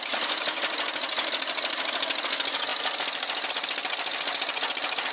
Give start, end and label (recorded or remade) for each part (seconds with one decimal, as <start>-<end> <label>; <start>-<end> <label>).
0.0-5.1 recorded